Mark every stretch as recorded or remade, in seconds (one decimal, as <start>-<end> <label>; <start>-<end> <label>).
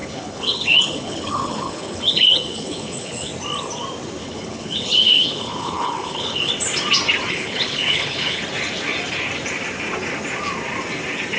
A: 0.0-3.3 remade; 3.3-4.2 recorded; 4.2-6.5 remade; 6.5-7.3 recorded; 7.3-8.4 remade; 8.4-11.4 recorded